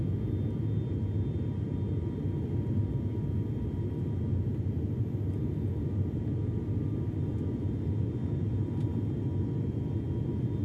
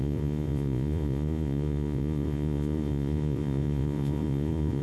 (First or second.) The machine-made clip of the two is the second